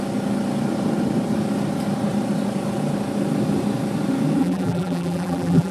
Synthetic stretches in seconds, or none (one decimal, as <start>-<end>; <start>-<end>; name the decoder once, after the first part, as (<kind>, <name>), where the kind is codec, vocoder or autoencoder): 4.4-5.7 (vocoder, BigVGAN v2)